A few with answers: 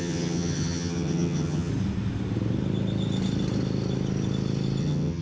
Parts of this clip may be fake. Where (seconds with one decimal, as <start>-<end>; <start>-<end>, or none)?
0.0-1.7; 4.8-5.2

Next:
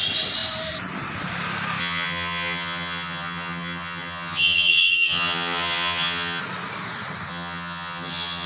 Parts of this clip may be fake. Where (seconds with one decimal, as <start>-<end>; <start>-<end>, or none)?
1.8-6.4; 7.3-8.5

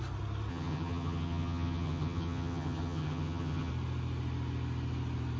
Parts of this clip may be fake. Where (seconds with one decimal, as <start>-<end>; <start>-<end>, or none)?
0.5-3.7